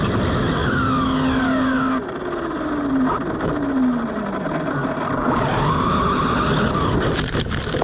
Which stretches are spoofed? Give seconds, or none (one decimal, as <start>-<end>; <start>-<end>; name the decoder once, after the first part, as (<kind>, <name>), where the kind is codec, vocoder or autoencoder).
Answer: none